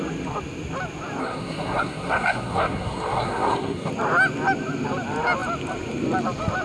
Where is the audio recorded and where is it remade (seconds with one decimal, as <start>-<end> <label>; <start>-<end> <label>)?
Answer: 0.0-1.2 recorded; 1.2-3.9 remade; 3.9-6.6 recorded